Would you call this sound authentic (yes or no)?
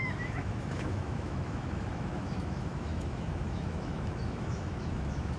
no